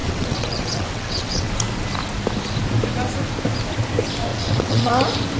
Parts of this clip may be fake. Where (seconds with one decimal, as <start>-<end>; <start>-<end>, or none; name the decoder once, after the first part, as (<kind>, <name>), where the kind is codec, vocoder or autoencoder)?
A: 0.0-1.5 (vocoder, WaveNeXt); 4.3-4.9